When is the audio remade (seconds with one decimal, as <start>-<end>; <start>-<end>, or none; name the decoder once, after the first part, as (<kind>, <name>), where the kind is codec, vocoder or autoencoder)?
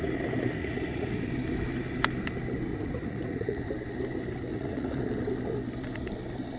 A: 0.6-1.3 (vocoder, Vocos); 2.7-3.7; 4.5-5.0